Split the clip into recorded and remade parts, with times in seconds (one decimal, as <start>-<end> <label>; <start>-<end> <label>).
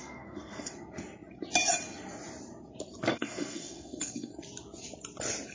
0.0-0.7 remade; 0.7-3.1 recorded; 3.1-4.3 remade; 4.3-5.5 recorded